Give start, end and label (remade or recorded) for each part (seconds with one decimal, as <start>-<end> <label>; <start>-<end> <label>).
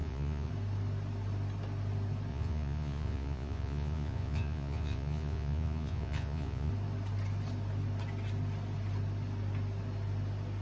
0.0-0.5 remade; 0.5-2.3 recorded; 2.3-6.7 remade; 6.7-10.6 recorded